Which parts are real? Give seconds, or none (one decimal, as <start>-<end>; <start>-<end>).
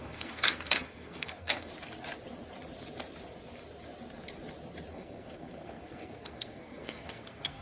1.7-4.9